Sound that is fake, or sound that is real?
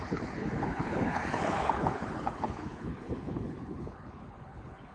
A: fake